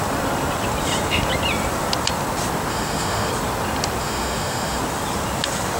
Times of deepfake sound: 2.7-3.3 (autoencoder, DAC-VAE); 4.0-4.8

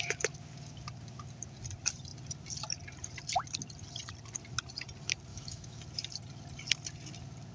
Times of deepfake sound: 5.3-5.8 (autoencoder, DAC-VAE)

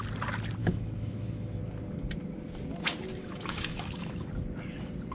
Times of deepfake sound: 0.6-1.6 (autoencoder, DAC-VAE); 3.2-4.3

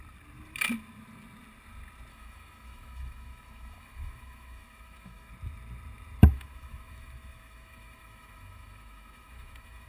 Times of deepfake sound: 2.1-5.3 (autoencoder, DAC-VAE); 6.2-9.9